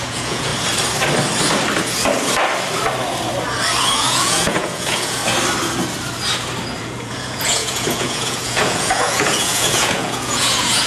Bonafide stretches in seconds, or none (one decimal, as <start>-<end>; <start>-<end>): 0.5-3.8; 5.2-6.8